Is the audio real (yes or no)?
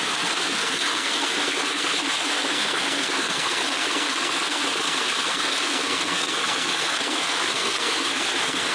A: no